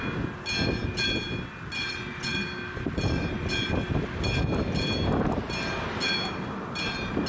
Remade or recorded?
recorded